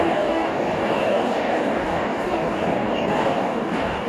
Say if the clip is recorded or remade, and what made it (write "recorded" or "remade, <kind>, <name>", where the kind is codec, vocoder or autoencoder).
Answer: remade, codec, DAC